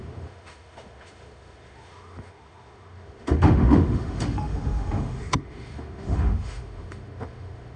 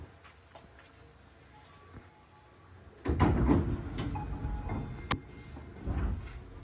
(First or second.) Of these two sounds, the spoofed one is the first